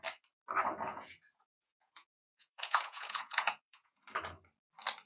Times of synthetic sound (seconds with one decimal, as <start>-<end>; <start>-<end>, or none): 0.9-4.0